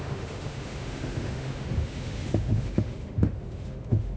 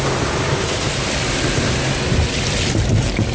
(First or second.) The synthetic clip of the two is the first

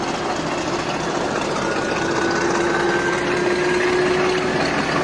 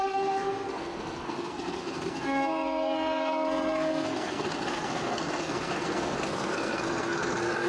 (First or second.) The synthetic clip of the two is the second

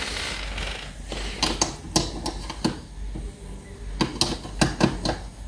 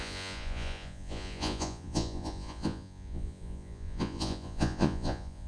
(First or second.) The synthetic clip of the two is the second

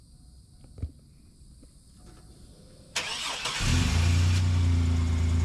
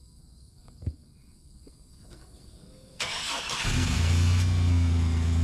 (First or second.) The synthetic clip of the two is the second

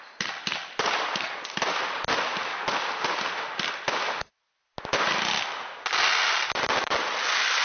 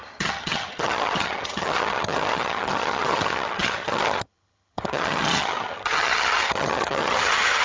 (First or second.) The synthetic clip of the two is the second